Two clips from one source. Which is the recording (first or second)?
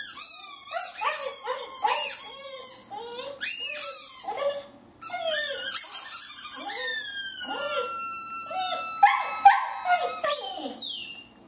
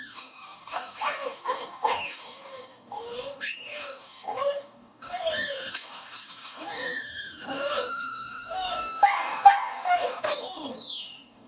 first